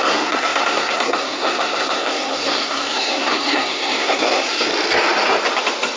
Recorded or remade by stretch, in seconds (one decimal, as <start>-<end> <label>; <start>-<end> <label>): 0.0-4.7 remade; 4.7-6.0 recorded